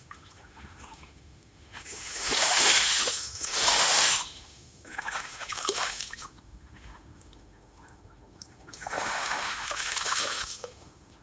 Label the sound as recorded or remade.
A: remade